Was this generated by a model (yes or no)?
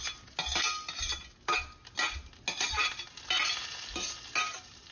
no